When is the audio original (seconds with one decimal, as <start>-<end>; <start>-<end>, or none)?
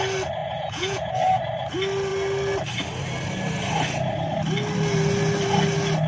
0.0-0.4; 1.4-6.1